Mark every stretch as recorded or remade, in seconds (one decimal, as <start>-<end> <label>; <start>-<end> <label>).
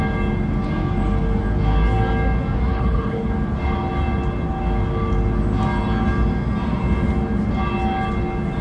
0.0-2.7 recorded; 2.7-3.3 remade; 3.3-8.6 recorded